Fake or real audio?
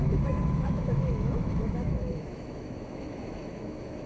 fake